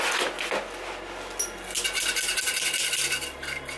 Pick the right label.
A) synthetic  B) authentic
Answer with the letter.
B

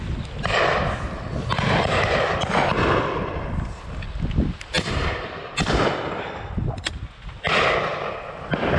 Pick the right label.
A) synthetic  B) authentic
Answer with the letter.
B